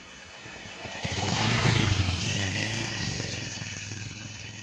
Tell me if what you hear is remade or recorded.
remade